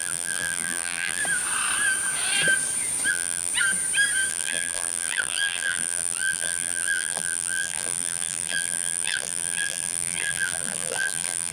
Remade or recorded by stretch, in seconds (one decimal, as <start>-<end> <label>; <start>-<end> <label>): 0.0-1.2 remade; 1.2-3.1 recorded; 3.1-3.5 remade; 3.5-4.3 recorded; 4.3-11.5 remade